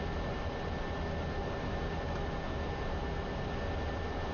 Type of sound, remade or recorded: recorded